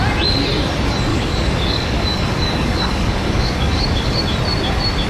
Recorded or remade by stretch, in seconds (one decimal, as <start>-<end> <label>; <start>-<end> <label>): 0.0-1.1 recorded; 1.1-4.2 remade; 4.2-5.1 recorded